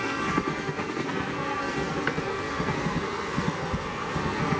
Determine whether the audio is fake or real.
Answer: fake